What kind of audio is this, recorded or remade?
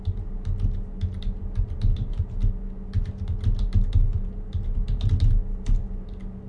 recorded